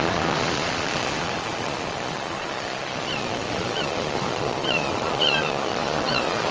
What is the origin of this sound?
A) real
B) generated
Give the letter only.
B